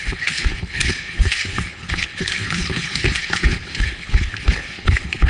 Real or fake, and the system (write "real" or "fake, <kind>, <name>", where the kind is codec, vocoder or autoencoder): fake, codec, HILCodec